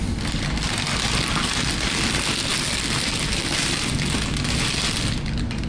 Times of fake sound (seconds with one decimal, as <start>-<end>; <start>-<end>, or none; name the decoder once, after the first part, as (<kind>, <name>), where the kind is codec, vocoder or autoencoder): 2.5-3.9 (vocoder, BigVGAN v2)